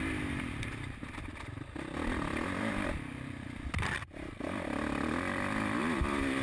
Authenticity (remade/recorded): remade